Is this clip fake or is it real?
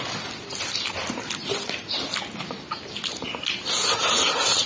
real